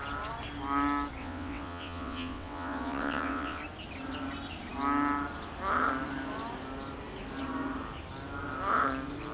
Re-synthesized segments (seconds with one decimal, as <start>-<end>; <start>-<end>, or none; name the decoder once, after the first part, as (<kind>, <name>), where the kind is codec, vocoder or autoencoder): 1.2-3.6 (vocoder, WaveNeXt)